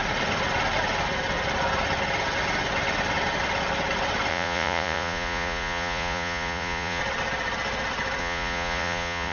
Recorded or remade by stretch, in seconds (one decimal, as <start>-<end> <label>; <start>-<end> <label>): 0.0-4.3 recorded; 4.3-7.0 remade; 7.0-8.2 recorded; 8.2-9.3 remade